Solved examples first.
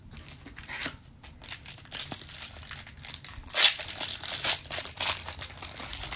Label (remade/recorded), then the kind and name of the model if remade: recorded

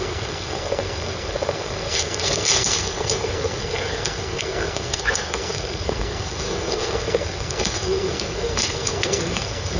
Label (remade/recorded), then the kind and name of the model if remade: remade, codec, SNAC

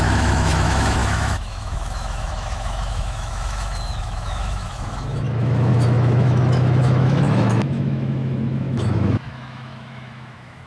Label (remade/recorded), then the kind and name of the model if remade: remade, autoencoder, DAC-VAE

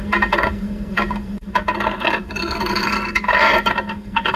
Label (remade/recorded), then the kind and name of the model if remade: remade, codec, SNAC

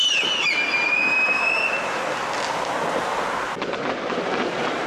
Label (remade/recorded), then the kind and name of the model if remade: recorded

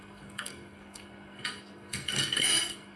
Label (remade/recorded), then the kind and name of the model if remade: remade, codec, SNAC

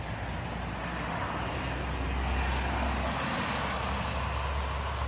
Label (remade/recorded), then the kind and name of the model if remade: recorded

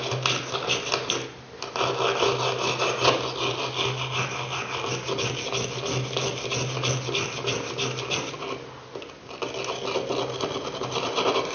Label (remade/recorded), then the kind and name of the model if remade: recorded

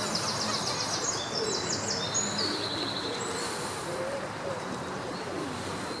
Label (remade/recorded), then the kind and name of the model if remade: recorded